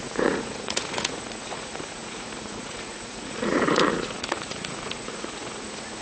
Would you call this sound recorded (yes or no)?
no